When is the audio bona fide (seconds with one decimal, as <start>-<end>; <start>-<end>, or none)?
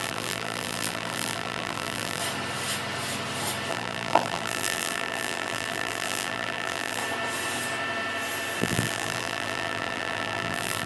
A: 2.2-3.7; 7.0-8.6